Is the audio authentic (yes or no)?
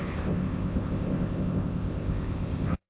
no